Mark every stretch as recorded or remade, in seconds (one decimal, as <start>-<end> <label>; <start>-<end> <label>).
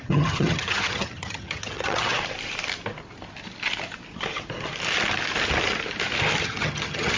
0.0-2.1 remade; 2.1-6.4 recorded; 6.4-7.2 remade